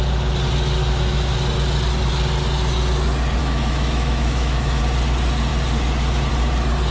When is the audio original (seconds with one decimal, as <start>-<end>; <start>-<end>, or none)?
0.0-0.8; 1.3-3.4; 4.8-6.9